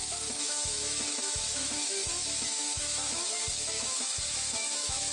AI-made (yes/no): yes